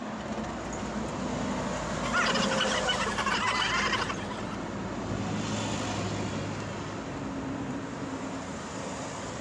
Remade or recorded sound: recorded